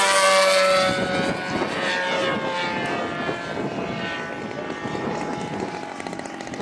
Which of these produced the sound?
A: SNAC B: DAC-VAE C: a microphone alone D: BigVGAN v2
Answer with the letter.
C